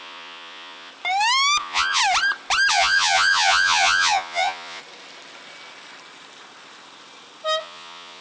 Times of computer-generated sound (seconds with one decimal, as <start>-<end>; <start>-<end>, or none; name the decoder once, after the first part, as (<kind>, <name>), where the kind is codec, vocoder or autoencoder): 0.0-0.9 (vocoder, Vocos); 1.6-2.0; 2.7-4.8; 7.6-8.2